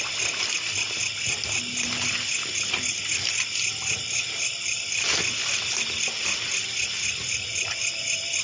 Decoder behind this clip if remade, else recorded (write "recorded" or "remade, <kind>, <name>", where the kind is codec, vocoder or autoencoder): recorded